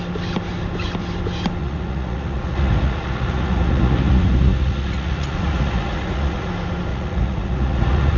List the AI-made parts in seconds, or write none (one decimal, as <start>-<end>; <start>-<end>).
1.6-6.5; 6.9-8.2